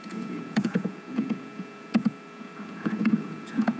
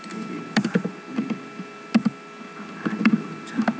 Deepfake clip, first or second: first